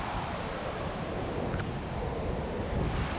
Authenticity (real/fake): real